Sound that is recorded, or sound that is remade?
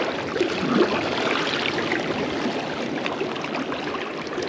recorded